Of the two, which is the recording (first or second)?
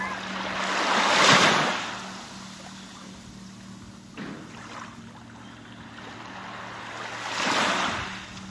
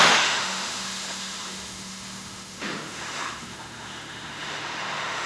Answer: first